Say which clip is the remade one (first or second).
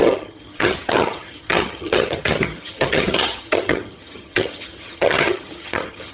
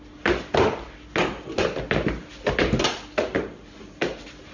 first